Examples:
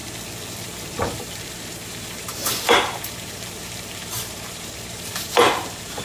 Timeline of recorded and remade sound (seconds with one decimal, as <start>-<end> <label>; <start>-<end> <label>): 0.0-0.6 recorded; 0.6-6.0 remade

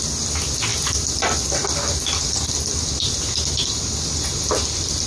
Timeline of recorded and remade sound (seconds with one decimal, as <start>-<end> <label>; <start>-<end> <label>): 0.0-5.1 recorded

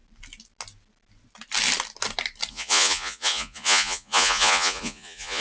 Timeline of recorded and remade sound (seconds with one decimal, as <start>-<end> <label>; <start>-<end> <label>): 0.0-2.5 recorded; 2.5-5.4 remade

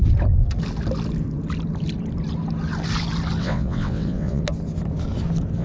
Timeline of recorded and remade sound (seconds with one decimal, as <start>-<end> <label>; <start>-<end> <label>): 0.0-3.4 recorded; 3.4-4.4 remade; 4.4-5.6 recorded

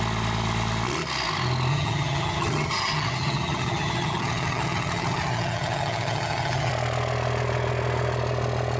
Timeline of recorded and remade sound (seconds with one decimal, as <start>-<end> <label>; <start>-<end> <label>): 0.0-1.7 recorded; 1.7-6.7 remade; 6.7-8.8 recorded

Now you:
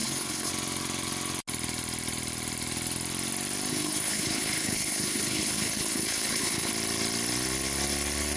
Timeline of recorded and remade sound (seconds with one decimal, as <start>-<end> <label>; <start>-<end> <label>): 0.0-0.5 remade; 0.5-3.7 recorded; 3.7-6.7 remade; 6.7-8.4 recorded

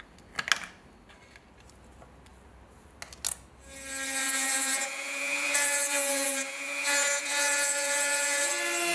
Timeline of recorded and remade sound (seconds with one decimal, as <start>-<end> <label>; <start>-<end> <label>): 0.0-4.2 recorded; 4.2-8.5 remade; 8.5-8.9 recorded